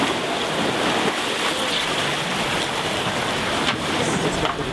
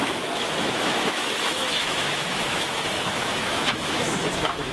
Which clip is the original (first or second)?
first